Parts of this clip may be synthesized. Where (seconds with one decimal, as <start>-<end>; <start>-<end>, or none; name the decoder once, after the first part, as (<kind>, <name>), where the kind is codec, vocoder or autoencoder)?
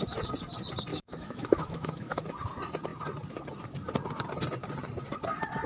0.9-2.2 (autoencoder, DAC-VAE)